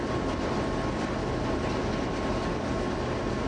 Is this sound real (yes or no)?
yes